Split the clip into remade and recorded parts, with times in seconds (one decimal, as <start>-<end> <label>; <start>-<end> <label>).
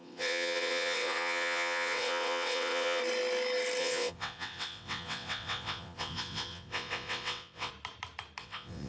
0.0-3.0 remade; 3.0-3.8 recorded; 3.8-7.7 remade; 7.7-8.4 recorded; 8.4-8.9 remade